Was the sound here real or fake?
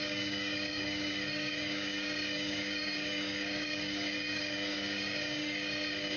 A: fake